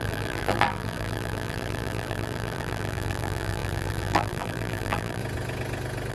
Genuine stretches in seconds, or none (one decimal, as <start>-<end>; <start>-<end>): 5.2-6.1